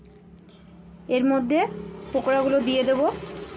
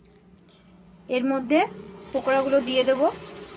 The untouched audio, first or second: first